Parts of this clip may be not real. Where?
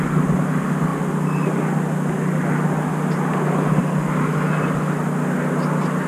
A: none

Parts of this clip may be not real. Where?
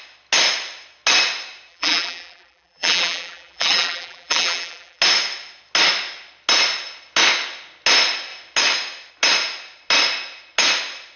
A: 1.7-5.0 (vocoder, BigVGAN v2)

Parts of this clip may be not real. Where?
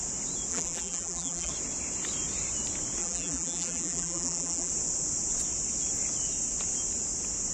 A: 0.5-1.5 (vocoder, BigVGAN v2); 3.0-4.7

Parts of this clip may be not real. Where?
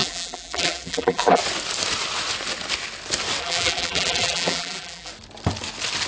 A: 0.0-1.4 (vocoder, BigVGAN v2); 3.4-5.1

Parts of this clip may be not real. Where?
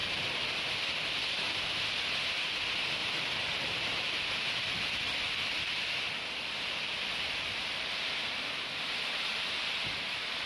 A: 3.0-4.9 (vocoder, BigVGAN v2); 9.3-10.5